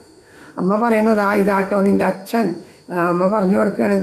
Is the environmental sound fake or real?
fake